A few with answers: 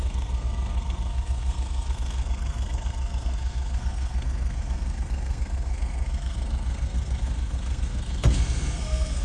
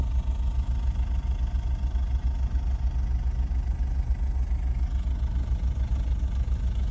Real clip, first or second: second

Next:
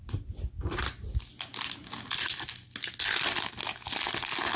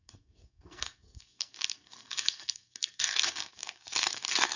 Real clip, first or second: first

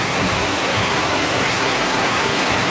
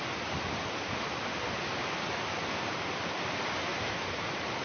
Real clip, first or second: second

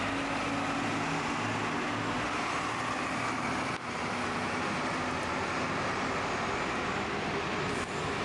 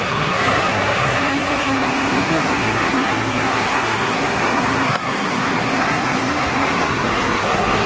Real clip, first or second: first